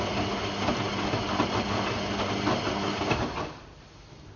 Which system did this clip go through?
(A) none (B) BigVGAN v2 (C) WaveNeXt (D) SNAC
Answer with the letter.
A